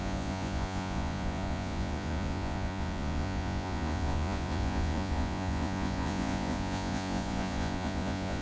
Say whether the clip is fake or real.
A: fake